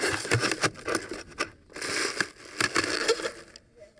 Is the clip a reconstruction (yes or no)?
no